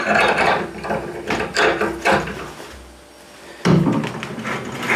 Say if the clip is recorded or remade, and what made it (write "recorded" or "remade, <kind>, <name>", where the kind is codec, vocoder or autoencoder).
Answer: recorded